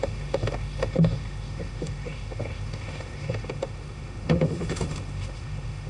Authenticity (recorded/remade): remade